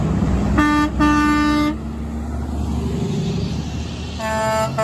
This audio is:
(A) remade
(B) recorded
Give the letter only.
B